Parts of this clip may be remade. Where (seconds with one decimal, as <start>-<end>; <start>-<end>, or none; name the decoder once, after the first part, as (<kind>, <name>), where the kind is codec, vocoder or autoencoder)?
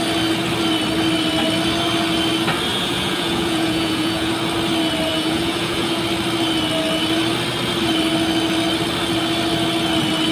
2.7-4.3 (vocoder, Vocos); 5.1-6.0